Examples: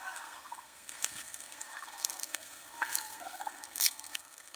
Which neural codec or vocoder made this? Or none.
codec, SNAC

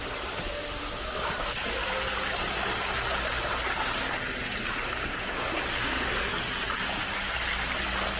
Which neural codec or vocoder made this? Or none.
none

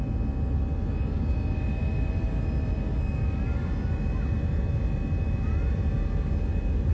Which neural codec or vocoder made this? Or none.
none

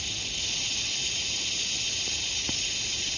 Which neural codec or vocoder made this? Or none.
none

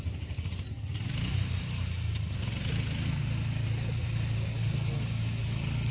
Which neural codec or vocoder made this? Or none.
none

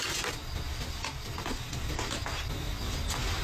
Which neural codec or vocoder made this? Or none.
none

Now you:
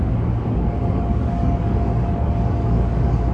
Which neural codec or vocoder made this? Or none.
codec, DAC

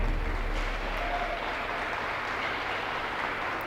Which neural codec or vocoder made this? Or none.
none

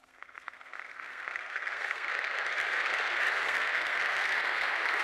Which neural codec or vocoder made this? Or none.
codec, SNAC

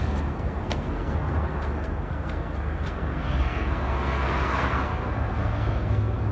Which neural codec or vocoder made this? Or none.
codec, SNAC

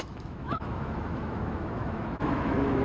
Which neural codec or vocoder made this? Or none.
autoencoder, DAC-VAE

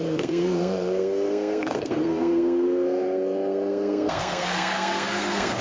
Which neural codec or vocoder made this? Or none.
codec, SNAC